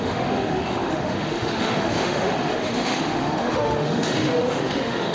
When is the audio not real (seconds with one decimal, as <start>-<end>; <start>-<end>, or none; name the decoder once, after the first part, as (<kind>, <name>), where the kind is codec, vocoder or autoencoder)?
0.0-5.1 (autoencoder, DAC-VAE)